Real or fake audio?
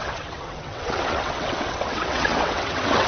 fake